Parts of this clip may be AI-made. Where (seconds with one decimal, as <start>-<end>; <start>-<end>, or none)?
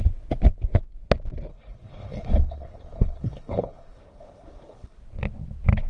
1.5-5.0